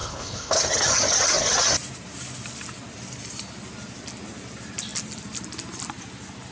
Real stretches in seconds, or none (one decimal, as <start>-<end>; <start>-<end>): 0.6-6.5